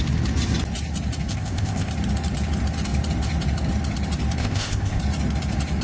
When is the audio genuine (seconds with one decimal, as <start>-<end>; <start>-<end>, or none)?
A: 0.0-1.3; 1.9-4.4; 5.0-5.8